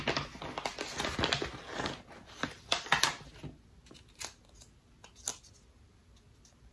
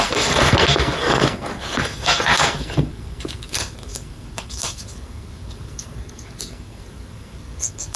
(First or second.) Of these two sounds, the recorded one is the first